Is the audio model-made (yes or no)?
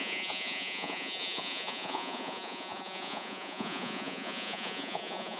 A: yes